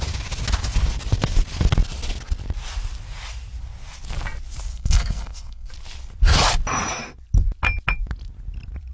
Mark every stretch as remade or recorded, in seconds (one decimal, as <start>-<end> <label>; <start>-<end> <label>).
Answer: 0.0-4.7 recorded; 4.7-5.7 remade; 5.7-8.9 recorded